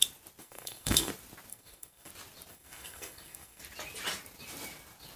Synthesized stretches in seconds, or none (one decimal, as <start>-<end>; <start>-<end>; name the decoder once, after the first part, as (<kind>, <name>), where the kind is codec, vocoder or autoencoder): 0.4-1.1 (codec, SNAC); 1.5-2.1; 2.5-3.6